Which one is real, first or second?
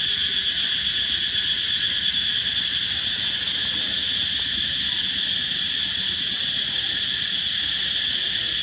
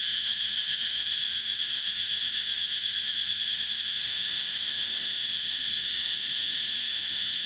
first